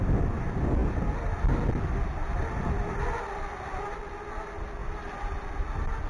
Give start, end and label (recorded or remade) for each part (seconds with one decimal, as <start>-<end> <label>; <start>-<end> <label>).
0.0-6.1 recorded

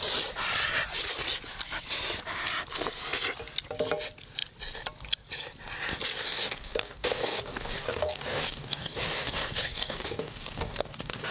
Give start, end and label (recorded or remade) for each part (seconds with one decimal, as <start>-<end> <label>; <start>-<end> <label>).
0.0-6.2 recorded; 6.2-11.3 remade

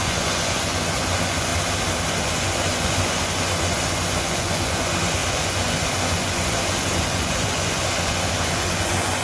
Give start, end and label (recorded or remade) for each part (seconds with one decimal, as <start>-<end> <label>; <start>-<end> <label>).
0.0-1.5 remade; 1.5-2.1 recorded; 2.1-9.2 remade

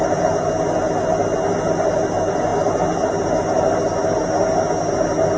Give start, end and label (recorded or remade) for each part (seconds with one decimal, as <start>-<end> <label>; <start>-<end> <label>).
0.0-5.4 recorded

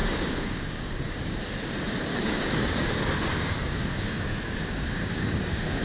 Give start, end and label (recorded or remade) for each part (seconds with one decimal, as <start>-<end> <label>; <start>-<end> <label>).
0.0-1.4 remade; 1.4-2.1 recorded; 2.1-5.8 remade

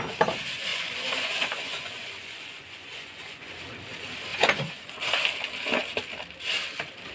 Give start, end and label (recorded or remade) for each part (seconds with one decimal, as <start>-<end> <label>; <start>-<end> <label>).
0.0-0.7 recorded; 0.7-3.6 remade; 3.6-4.3 recorded; 4.3-4.9 remade; 4.9-7.1 recorded

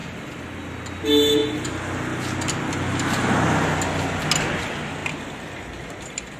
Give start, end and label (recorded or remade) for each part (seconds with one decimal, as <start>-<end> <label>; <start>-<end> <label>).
0.0-6.4 recorded